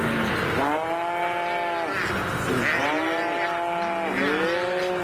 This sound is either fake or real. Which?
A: real